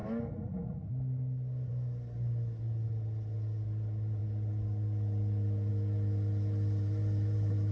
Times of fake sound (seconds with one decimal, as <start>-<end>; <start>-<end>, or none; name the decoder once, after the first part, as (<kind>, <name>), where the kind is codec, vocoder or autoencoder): none

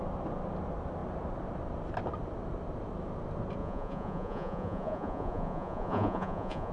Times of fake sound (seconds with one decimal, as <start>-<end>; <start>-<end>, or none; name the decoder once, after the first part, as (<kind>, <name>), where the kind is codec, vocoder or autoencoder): 3.6-6.7 (vocoder, Vocos)

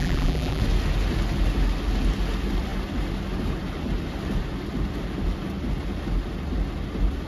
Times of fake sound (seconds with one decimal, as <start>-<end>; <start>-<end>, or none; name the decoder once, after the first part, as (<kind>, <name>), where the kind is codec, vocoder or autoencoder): 0.0-0.6 (vocoder, BigVGAN v2)